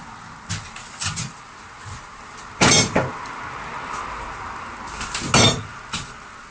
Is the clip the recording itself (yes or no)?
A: yes